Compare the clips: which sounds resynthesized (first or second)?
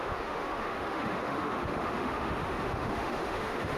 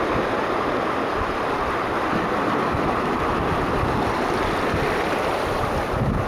first